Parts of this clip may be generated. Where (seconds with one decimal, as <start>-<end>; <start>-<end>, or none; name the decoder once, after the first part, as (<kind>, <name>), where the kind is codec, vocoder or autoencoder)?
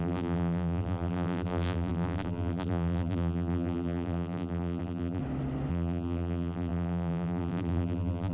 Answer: 0.0-5.2 (vocoder, BigVGAN v2); 5.7-8.3